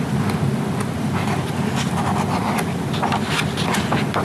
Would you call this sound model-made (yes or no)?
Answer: no